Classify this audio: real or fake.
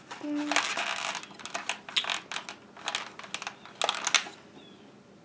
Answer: real